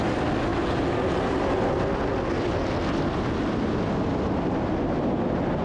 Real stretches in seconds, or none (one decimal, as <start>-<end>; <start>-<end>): 0.0-5.6